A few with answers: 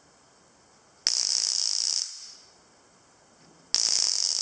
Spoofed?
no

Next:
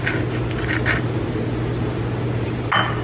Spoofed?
no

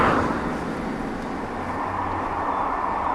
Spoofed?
no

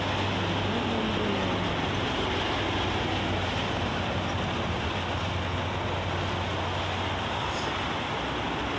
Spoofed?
no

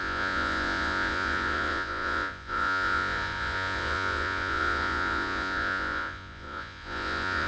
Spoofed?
yes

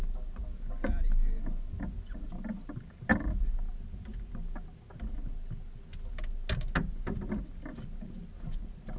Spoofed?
no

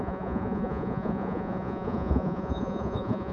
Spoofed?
yes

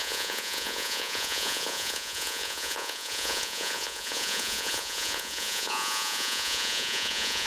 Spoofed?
yes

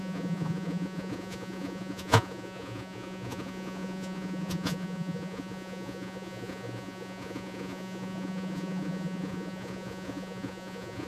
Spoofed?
yes